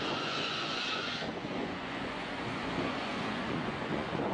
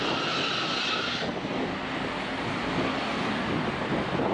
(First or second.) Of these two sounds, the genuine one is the second